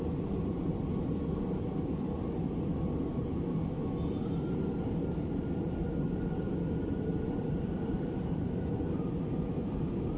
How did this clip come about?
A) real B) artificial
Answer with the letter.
A